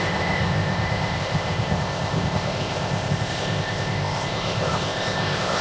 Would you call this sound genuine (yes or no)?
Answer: no